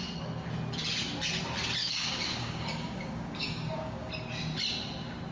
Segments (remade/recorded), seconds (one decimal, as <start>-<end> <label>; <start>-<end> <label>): 0.0-1.8 recorded; 1.8-4.1 remade; 4.1-5.3 recorded